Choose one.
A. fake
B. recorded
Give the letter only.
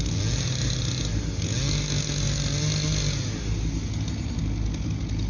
B